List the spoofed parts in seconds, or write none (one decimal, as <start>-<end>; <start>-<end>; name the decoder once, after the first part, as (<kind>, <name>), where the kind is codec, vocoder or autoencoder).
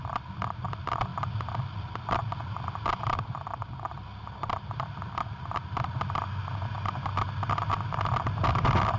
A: none